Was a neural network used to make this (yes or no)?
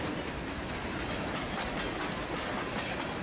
no